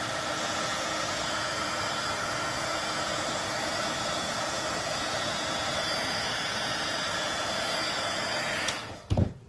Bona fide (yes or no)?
no